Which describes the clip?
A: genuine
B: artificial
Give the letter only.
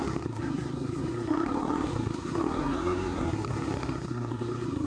B